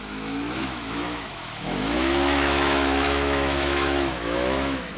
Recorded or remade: remade